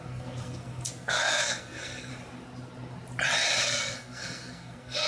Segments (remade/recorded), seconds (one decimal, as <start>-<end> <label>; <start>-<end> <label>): 0.0-2.1 remade; 2.1-3.6 recorded; 3.6-5.1 remade